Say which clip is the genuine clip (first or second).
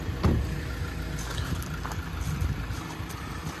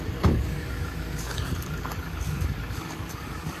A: first